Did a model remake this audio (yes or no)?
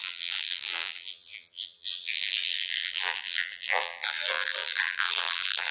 yes